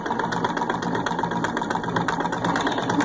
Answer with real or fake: real